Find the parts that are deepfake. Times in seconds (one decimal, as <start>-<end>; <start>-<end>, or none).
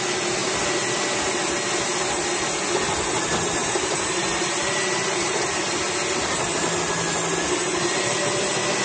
3.6-5.8